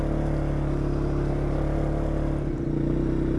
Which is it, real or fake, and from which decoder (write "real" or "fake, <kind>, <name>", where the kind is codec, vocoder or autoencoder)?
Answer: real